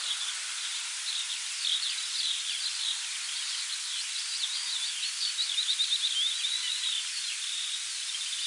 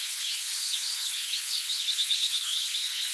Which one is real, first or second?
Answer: first